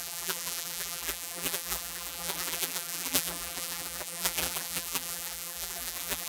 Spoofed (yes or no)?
yes